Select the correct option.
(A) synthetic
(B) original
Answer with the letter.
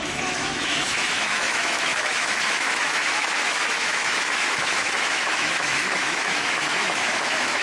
A